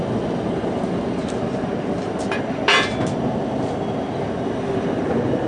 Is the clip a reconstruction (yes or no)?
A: no